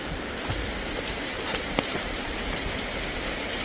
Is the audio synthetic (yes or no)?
yes